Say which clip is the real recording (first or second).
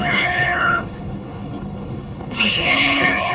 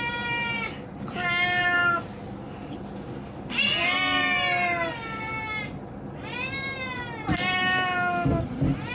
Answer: second